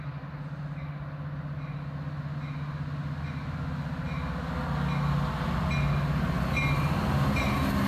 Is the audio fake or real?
real